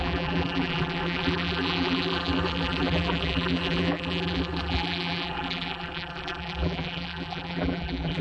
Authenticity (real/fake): fake